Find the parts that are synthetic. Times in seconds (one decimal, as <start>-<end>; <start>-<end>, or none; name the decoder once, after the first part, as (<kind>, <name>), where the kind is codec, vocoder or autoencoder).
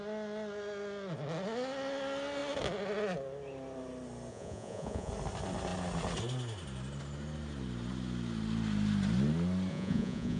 4.3-5.1 (vocoder, Vocos); 9.7-10.4